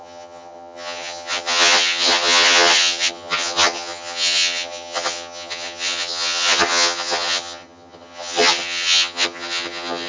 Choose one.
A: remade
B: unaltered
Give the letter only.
A